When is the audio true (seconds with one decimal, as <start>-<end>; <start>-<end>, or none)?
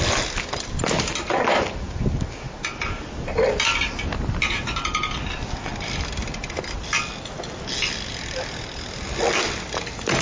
0.0-10.2